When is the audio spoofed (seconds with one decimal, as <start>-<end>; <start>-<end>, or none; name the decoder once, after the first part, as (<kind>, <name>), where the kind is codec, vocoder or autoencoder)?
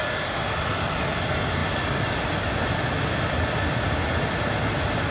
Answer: none